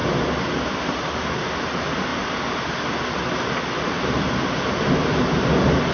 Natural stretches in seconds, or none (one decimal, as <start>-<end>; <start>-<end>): 0.0-5.9

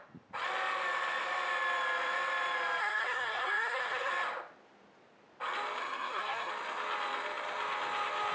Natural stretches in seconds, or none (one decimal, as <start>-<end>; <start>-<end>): 0.0-2.8; 4.1-5.8; 6.5-8.3